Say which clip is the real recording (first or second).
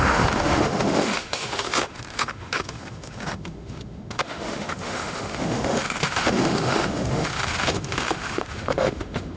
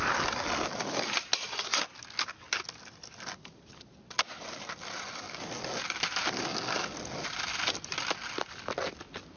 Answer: second